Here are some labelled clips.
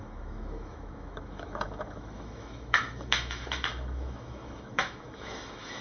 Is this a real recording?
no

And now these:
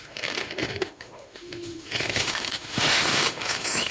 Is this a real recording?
no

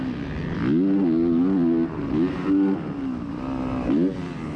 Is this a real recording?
yes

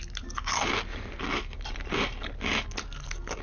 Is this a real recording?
yes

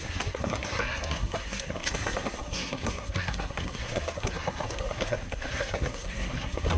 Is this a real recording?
no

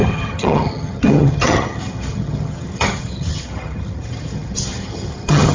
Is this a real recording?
no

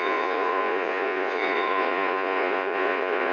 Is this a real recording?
no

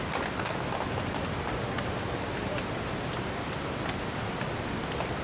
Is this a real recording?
yes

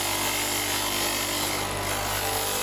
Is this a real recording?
yes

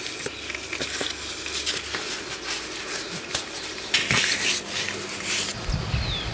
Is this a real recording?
yes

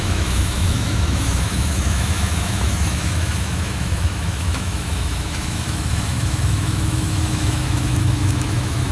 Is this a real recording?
no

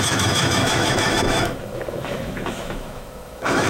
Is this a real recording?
no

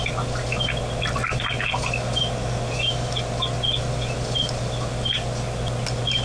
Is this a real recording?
yes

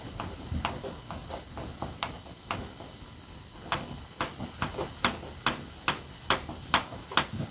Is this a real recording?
yes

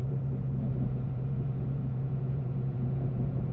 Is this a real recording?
no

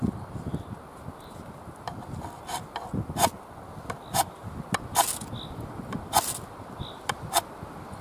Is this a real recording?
yes